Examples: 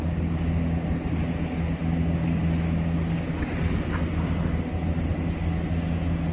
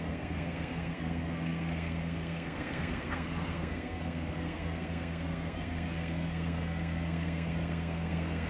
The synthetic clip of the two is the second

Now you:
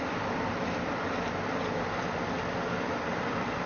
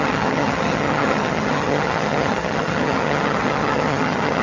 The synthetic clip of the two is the second